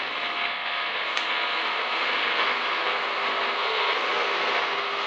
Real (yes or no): no